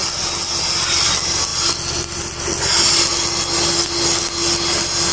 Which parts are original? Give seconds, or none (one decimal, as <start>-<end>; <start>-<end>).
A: 0.0-5.1